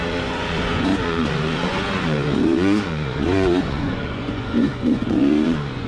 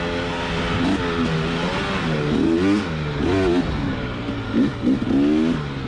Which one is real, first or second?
second